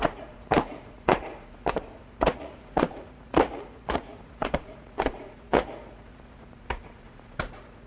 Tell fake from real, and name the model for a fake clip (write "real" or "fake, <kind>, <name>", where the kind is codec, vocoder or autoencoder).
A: fake, vocoder, Vocos